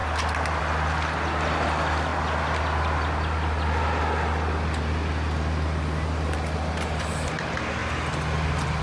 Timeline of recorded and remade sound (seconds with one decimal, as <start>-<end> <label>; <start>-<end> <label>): 0.0-8.8 recorded